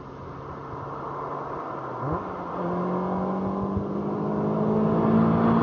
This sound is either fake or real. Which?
real